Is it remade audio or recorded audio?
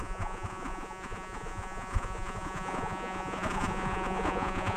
remade